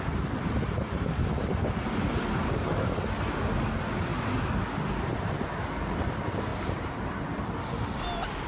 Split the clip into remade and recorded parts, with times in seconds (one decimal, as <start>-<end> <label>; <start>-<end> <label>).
0.0-8.5 recorded